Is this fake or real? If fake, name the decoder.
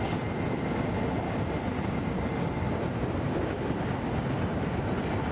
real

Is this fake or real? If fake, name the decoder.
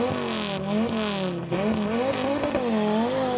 real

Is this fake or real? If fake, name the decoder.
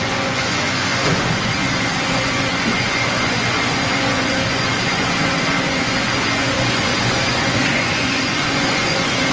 fake, vocoder, Vocos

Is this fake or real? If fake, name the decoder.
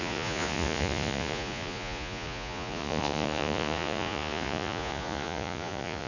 fake, vocoder, Vocos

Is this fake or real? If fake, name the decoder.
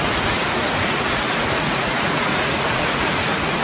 fake, vocoder, Vocos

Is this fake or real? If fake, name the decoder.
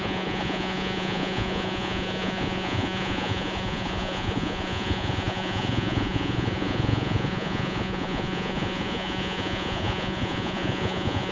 fake, vocoder, Vocos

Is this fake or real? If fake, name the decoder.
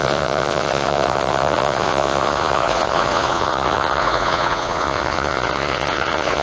fake, vocoder, Vocos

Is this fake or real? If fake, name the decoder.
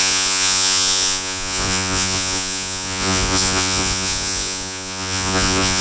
fake, vocoder, Vocos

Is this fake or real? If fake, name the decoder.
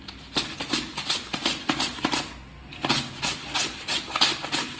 real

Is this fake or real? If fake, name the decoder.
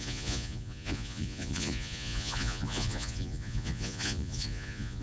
fake, vocoder, Vocos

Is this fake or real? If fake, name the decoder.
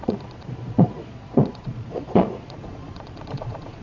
fake, vocoder, Vocos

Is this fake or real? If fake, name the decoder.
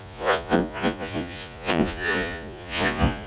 fake, vocoder, Vocos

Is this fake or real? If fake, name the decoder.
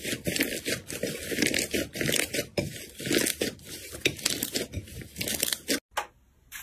real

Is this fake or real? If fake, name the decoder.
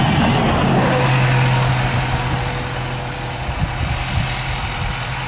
real